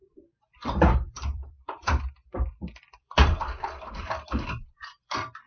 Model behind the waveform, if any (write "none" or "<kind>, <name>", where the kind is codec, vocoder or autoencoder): vocoder, BigVGAN v2